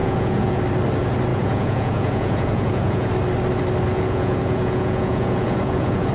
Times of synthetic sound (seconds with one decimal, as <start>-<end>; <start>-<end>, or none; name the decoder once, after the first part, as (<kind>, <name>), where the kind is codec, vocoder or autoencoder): 0.0-0.6 (vocoder, Vocos); 1.3-3.1; 3.9-6.1